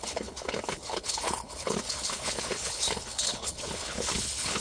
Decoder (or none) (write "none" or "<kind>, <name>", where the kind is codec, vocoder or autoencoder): codec, HILCodec